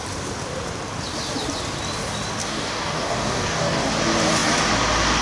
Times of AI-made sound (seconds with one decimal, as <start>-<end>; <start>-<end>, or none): 2.4-3.9

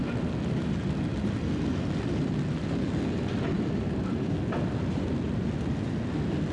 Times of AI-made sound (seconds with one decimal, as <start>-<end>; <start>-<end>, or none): none

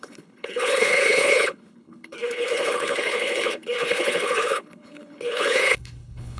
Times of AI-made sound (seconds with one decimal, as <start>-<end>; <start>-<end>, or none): 0.0-6.4

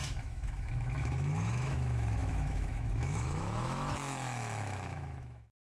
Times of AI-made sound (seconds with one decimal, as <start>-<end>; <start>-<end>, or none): 0.0-5.6

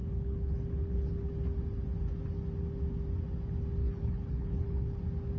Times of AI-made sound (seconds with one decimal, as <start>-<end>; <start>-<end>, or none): 0.0-1.3; 3.8-5.0